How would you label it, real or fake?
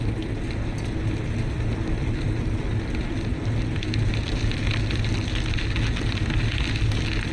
real